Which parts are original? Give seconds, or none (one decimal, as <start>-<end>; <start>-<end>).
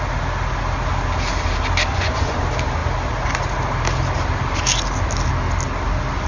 0.0-1.9; 2.4-6.3